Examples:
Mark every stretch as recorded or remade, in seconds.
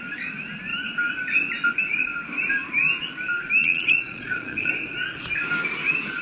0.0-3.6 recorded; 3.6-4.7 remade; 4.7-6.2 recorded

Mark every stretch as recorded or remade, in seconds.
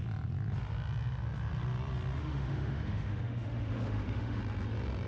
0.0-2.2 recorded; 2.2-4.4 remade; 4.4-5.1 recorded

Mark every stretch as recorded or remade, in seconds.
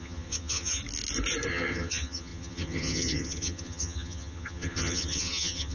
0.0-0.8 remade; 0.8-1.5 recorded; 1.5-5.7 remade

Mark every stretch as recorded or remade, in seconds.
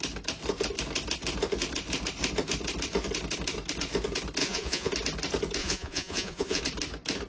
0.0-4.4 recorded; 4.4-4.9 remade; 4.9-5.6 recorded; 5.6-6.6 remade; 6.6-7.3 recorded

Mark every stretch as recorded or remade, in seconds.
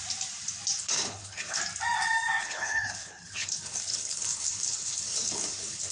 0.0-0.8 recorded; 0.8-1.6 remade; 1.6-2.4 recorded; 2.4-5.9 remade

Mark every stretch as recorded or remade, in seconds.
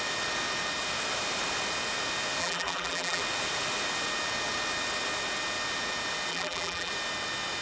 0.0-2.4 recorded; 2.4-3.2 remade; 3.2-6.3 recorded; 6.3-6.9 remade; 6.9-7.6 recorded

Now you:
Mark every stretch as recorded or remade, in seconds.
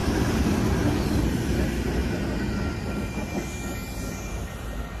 0.0-5.0 recorded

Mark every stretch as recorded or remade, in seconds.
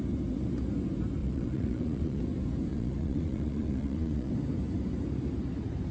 0.0-1.2 recorded; 1.2-2.2 remade; 2.2-2.7 recorded; 2.7-4.3 remade; 4.3-5.9 recorded